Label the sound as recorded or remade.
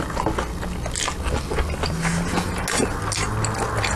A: recorded